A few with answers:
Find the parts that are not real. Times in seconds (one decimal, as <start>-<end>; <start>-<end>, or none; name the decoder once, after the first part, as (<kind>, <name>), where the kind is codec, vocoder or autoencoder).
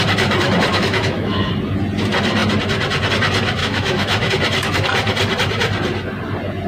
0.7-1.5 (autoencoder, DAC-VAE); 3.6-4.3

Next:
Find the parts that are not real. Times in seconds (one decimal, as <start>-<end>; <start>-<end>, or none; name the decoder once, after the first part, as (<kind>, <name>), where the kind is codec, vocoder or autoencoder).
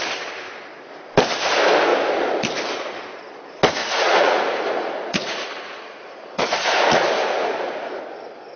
3.8-8.0 (vocoder, Vocos)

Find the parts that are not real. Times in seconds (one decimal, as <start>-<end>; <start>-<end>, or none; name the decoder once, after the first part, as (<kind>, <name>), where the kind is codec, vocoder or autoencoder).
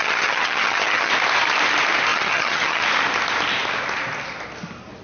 0.0-1.1 (vocoder, HiFi-GAN); 2.1-2.8